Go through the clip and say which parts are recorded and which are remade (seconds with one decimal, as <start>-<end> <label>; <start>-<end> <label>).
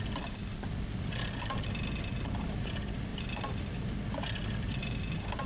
0.0-5.5 recorded